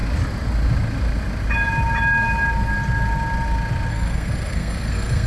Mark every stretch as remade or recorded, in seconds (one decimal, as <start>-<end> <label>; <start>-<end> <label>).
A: 0.0-3.9 recorded; 3.9-5.3 remade